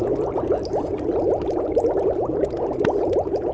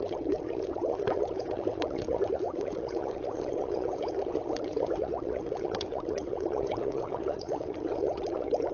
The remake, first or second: second